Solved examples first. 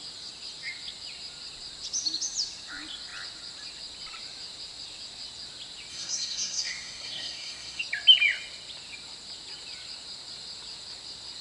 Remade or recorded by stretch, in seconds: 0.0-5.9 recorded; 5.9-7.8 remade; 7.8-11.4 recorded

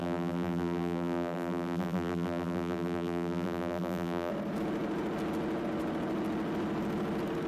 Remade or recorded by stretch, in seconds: 0.0-4.3 remade; 4.3-7.5 recorded

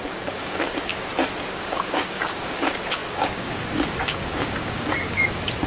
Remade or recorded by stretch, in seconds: 0.0-0.9 remade; 0.9-1.5 recorded; 1.5-5.7 remade

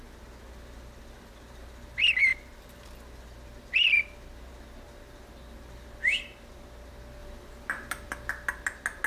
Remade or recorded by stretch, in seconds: 0.0-9.1 recorded

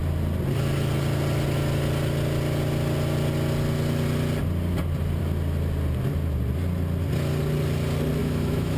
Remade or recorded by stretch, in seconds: 0.0-8.2 recorded; 8.2-8.8 remade